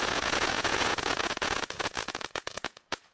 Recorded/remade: remade